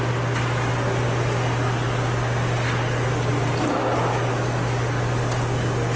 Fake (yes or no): no